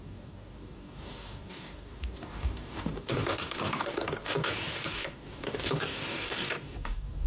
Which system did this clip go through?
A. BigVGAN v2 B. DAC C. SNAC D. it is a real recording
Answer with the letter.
B